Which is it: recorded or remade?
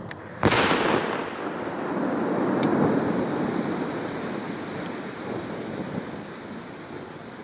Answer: recorded